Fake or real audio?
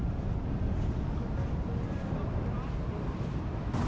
real